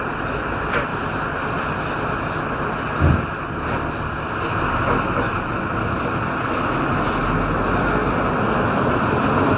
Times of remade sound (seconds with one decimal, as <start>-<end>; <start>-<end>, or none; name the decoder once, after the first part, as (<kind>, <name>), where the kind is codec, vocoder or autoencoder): 0.9-1.4 (vocoder, BigVGAN v2)